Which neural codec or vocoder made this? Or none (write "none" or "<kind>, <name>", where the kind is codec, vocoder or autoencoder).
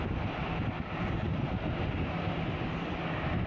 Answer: none